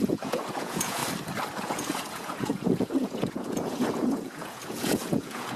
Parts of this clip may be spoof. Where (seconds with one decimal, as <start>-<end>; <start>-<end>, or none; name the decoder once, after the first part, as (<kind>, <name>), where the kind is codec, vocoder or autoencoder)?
0.0-1.0 (vocoder, Vocos); 1.6-5.6